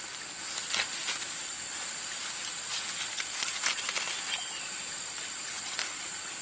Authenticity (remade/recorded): recorded